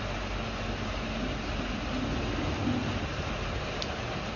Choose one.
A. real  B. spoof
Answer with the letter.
A